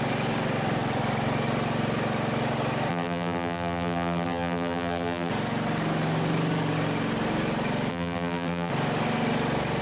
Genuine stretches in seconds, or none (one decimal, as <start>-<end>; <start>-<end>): 0.0-2.9; 5.3-7.9; 8.7-9.8